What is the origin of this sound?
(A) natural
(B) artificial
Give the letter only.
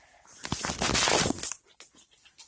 A